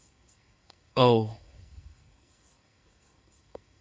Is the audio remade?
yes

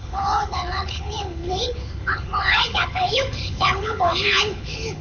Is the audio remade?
yes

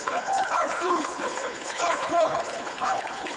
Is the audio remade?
yes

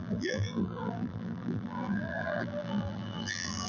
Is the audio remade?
yes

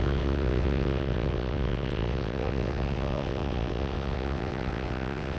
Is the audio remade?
yes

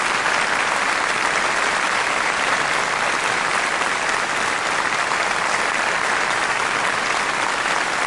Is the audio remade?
no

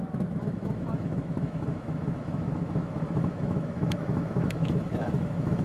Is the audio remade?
yes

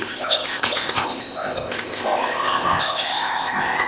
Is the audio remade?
yes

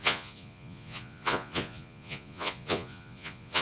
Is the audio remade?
yes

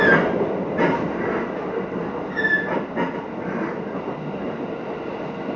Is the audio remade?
no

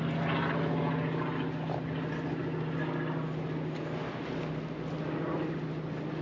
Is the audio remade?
no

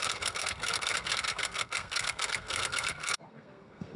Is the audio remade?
yes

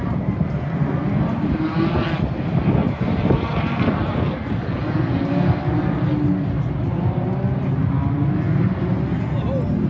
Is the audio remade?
no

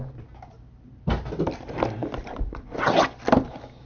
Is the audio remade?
no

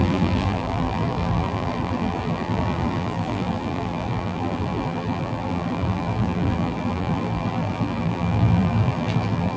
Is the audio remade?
yes